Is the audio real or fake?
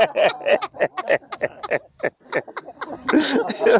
real